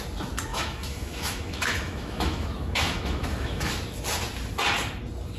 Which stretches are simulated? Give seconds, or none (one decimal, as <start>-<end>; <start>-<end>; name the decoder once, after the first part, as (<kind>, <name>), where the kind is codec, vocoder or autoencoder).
0.5-3.7 (autoencoder, DAC-VAE)